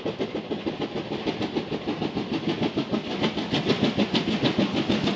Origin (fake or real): real